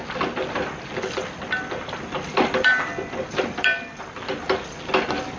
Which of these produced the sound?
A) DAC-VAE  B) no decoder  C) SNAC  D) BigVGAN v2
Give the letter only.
B